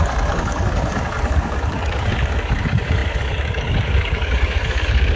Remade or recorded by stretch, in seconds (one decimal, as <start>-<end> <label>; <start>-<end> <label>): 0.0-5.2 remade